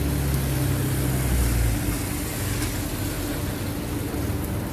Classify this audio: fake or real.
real